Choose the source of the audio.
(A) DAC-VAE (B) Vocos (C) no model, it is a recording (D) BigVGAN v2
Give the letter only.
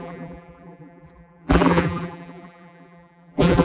D